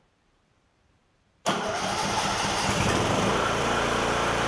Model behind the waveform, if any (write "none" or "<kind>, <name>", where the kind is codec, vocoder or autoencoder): vocoder, BigVGAN v2